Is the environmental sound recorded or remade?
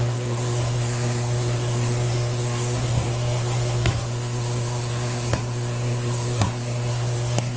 remade